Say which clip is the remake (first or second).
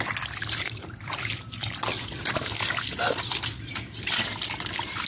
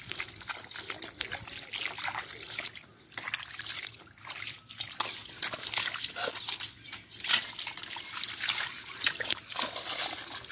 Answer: first